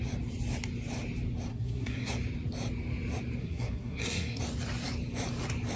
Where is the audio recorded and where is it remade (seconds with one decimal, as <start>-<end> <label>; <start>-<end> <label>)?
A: 0.0-1.5 recorded; 1.5-2.1 remade; 2.1-3.4 recorded; 3.4-4.4 remade; 4.4-5.8 recorded